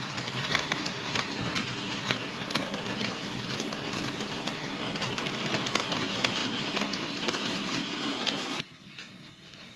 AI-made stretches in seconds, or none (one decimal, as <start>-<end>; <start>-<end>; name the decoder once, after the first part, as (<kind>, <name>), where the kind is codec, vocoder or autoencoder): 0.0-5.2 (codec, SNAC); 5.7-9.8